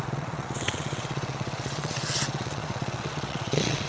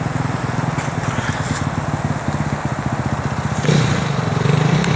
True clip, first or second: second